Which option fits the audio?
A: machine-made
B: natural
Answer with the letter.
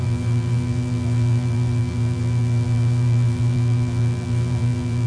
A